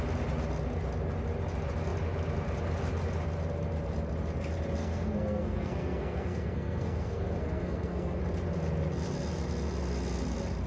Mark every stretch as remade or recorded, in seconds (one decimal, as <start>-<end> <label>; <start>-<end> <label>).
0.0-4.8 recorded; 4.8-8.2 remade; 8.2-10.7 recorded